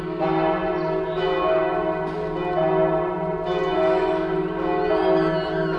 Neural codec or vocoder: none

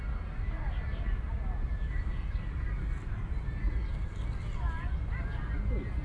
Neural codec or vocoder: none